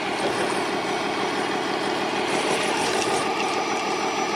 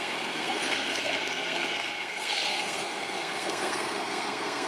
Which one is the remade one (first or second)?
second